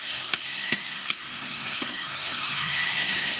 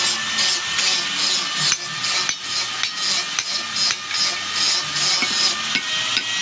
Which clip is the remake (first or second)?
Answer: first